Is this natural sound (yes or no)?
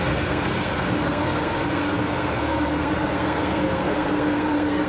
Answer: no